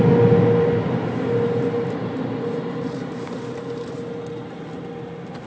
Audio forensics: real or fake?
real